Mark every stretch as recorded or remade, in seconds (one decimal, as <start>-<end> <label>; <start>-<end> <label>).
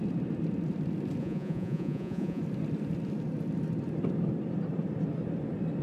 0.0-1.2 recorded; 1.2-2.4 remade; 2.4-5.8 recorded